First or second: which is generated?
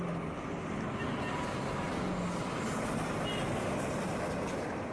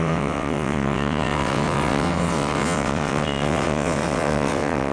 second